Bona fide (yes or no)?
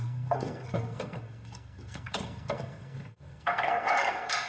no